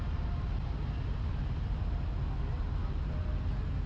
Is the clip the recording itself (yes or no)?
yes